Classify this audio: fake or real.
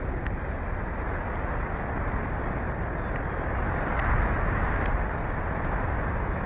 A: real